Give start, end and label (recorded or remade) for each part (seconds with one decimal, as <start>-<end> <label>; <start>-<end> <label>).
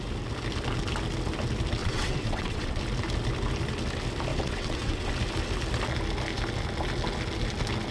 0.0-1.8 recorded; 1.8-2.8 remade; 2.8-4.3 recorded; 4.3-5.1 remade; 5.1-7.9 recorded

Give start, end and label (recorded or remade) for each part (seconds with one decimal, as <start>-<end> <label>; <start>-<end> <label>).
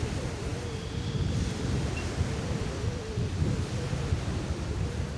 0.0-5.2 recorded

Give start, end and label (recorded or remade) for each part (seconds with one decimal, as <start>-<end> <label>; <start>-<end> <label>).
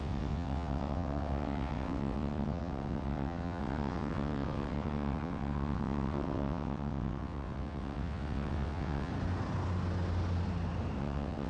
0.0-9.1 remade; 9.1-11.0 recorded; 11.0-11.5 remade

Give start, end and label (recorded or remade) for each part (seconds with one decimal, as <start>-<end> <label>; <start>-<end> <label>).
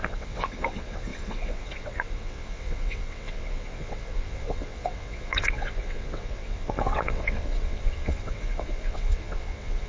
0.0-9.9 remade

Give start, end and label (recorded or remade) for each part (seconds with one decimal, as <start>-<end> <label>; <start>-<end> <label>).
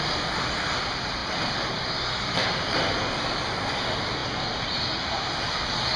0.0-6.0 recorded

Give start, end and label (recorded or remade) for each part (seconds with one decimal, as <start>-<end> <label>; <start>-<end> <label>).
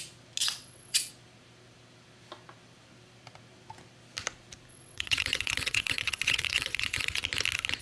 0.0-0.4 recorded; 0.4-1.1 remade; 1.1-4.7 recorded; 4.7-7.2 remade; 7.2-7.8 recorded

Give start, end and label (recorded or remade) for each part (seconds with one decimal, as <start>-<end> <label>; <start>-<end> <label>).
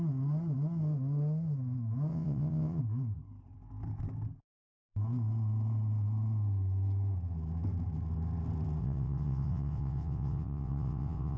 0.0-2.1 recorded; 2.1-2.8 remade; 2.8-8.8 recorded; 8.8-11.4 remade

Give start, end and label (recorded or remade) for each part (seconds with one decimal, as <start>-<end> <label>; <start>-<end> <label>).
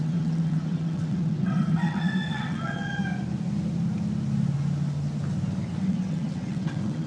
0.0-3.0 remade; 3.0-5.8 recorded; 5.8-7.1 remade